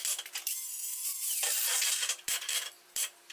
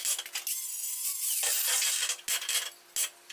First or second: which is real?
second